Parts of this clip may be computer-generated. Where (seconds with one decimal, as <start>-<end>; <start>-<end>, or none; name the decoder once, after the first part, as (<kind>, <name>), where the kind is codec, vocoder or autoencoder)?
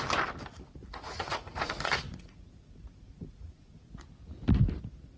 0.8-3.8 (vocoder, Vocos)